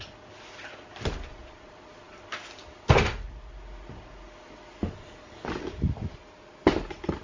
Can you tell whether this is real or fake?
real